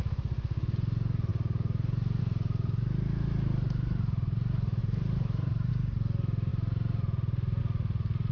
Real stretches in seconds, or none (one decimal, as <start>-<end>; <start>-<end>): 0.0-4.8; 5.7-6.5; 7.6-8.3